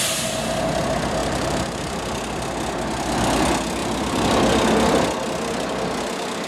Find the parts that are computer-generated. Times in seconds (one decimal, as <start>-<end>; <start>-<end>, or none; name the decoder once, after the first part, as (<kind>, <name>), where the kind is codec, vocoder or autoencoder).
1.2-2.0 (vocoder, BigVGAN v2); 3.8-4.4